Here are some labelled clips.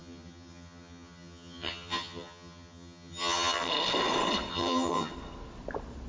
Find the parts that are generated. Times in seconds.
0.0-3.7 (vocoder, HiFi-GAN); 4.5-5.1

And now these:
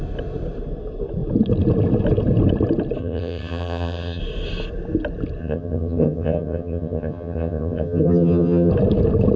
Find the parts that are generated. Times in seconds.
3.0-4.2 (vocoder, HiFi-GAN); 5.4-8.7

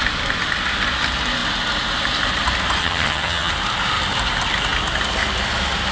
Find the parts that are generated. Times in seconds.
2.8-3.5 (vocoder, HiFi-GAN)

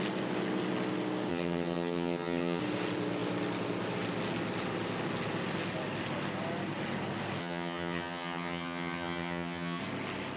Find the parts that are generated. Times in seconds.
1.3-2.6 (vocoder, HiFi-GAN); 7.4-9.8

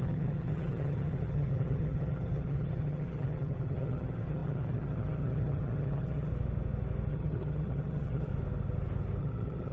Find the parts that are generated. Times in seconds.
0.0-6.3 (vocoder, HiFi-GAN); 7.1-8.3; 9.2-9.7

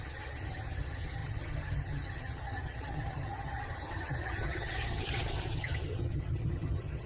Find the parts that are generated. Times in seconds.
0.0-7.1 (vocoder, HiFi-GAN)

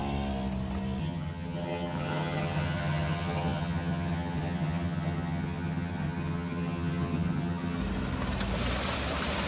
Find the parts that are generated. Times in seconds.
1.0-7.8 (vocoder, HiFi-GAN)